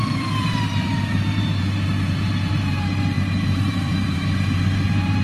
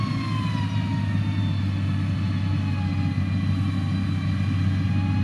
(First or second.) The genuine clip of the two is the second